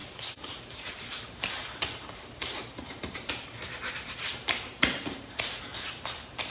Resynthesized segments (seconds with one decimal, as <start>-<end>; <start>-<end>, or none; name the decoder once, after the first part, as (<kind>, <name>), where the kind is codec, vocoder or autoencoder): 0.0-6.5 (vocoder, BigVGAN v2)